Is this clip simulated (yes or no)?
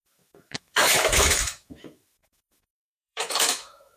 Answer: yes